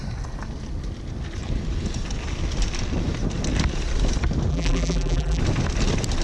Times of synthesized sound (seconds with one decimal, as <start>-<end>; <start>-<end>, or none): 4.5-5.4